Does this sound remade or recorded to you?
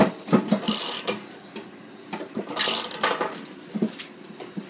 recorded